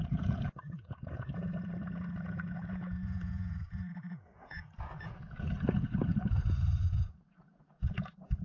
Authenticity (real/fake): fake